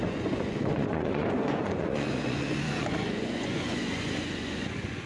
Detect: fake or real fake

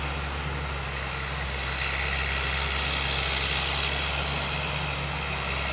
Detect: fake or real real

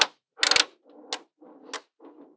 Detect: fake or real real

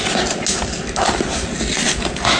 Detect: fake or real real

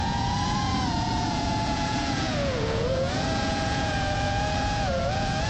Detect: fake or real fake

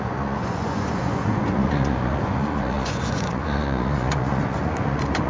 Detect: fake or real fake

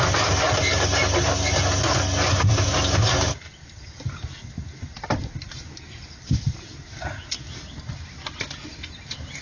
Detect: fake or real real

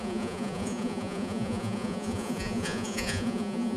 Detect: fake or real fake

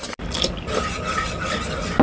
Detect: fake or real real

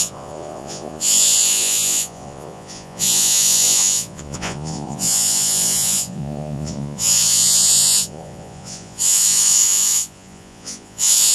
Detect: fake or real fake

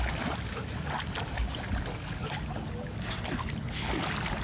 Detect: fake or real real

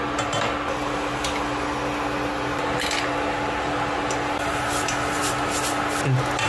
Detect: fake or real real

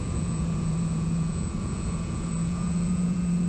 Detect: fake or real fake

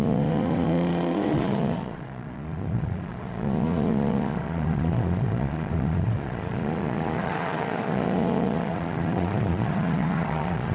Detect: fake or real fake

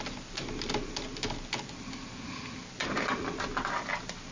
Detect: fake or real real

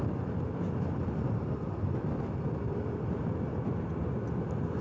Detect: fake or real real